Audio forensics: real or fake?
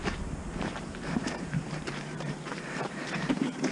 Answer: fake